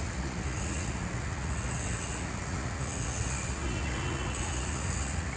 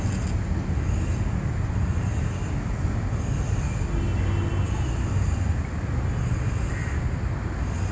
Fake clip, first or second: first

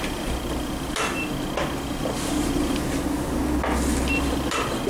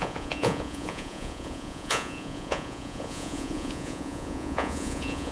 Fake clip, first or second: second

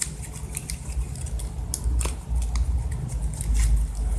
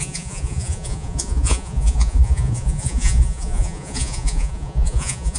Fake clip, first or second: second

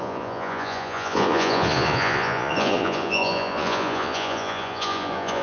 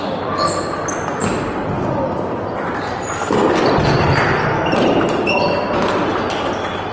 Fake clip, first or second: first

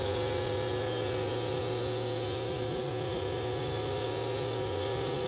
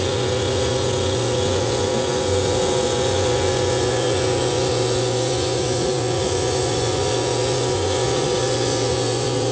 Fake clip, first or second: second